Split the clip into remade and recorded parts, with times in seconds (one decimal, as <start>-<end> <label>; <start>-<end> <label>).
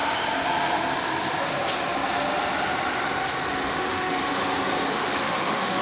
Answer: 0.0-3.5 recorded; 3.5-4.4 remade; 4.4-4.9 recorded; 4.9-5.8 remade